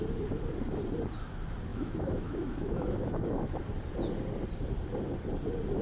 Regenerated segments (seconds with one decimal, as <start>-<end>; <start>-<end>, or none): 1.7-3.6